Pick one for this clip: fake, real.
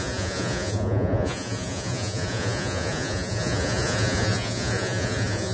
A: fake